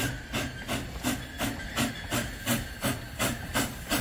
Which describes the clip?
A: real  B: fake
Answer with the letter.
A